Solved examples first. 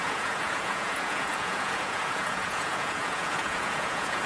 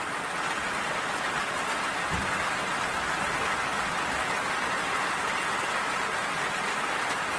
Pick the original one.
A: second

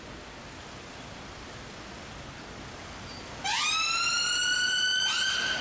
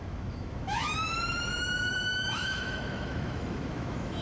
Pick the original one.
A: first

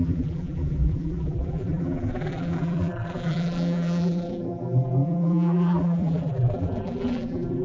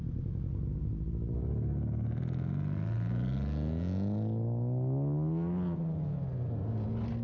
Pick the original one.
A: second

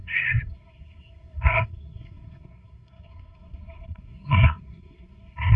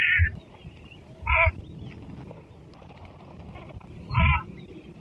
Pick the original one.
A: second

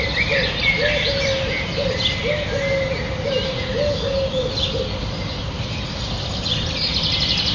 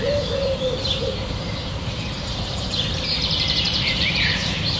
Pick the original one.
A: first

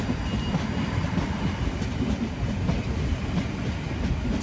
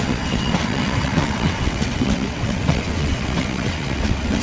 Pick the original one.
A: first